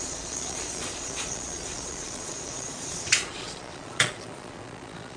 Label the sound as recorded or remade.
remade